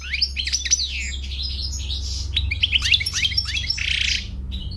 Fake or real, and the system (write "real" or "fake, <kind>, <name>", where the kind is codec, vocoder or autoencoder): real